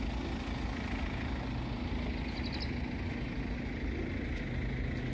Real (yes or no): yes